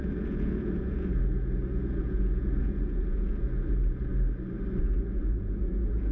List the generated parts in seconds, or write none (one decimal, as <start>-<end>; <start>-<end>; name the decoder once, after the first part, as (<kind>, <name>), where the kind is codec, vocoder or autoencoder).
0.0-4.1 (vocoder, Vocos); 4.8-6.1